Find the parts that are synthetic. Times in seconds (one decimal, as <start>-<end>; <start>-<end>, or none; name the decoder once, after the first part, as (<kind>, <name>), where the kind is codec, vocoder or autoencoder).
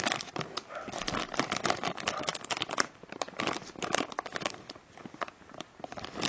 none